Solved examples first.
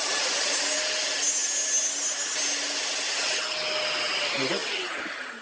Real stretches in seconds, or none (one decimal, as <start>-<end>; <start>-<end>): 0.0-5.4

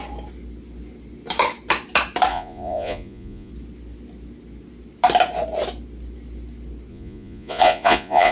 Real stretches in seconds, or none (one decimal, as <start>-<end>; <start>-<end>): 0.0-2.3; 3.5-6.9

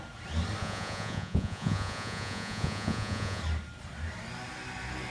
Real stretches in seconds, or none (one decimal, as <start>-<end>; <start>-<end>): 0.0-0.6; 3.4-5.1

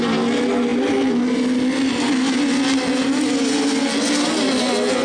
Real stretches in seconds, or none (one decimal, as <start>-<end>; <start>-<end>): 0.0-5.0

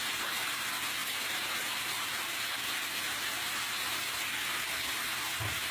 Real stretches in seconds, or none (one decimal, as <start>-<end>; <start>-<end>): 0.0-5.7

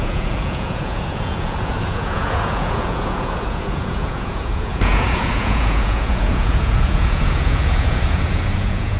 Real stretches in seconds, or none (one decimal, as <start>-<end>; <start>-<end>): none

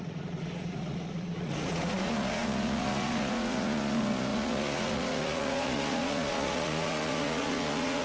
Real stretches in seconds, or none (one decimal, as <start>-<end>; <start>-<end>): none

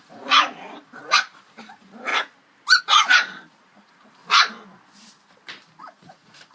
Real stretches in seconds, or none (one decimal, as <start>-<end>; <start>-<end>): 2.1-2.8; 4.2-5.8